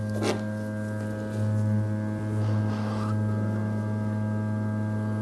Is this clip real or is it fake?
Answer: real